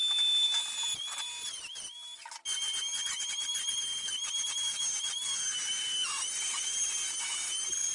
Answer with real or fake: real